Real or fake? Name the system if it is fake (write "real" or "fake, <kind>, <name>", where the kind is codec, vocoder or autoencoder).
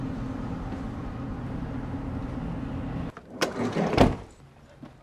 real